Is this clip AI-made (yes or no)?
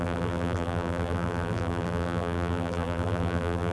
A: yes